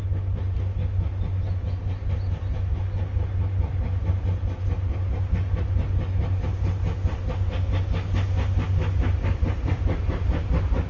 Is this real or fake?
real